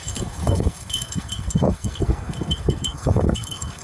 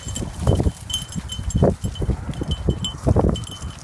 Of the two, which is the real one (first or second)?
second